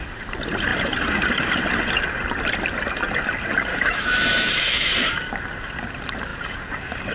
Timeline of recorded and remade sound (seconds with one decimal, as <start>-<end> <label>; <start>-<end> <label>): 0.0-3.7 recorded; 3.7-4.9 remade; 4.9-7.1 recorded